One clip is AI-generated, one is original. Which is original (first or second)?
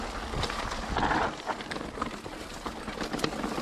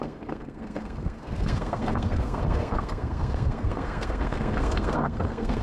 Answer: first